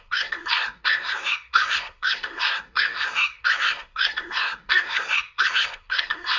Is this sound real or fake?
fake